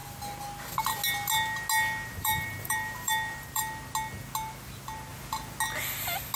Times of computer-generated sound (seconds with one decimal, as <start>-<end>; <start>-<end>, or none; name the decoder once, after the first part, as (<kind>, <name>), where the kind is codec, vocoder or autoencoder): 2.1-3.6 (vocoder, BigVGAN v2)